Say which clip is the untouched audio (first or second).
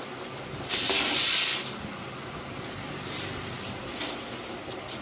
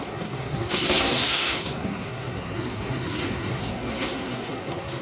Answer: first